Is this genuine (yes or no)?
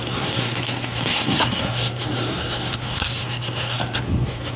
no